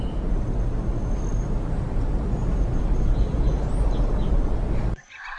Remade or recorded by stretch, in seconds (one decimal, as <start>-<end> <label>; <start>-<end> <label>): 0.0-1.3 recorded; 1.3-4.5 remade; 4.5-5.4 recorded